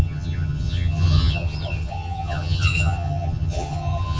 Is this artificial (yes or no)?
yes